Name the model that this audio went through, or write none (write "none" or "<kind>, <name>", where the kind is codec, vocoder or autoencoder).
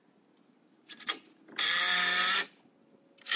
none